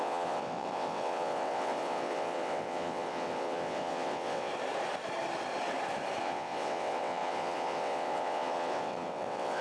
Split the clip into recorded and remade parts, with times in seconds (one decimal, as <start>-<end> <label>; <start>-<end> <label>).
0.0-4.5 remade; 4.5-6.2 recorded; 6.2-9.6 remade